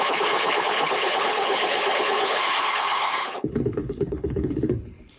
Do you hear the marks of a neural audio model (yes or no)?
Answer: yes